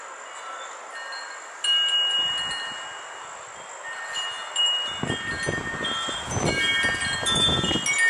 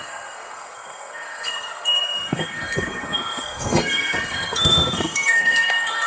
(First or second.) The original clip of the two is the first